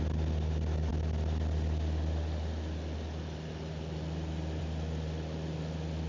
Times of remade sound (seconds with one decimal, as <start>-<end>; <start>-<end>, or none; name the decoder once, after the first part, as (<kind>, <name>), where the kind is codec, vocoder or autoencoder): none